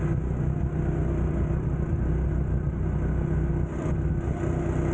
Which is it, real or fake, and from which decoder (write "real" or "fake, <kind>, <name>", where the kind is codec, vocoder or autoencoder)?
real